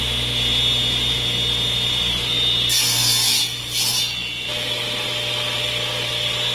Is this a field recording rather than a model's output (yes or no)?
yes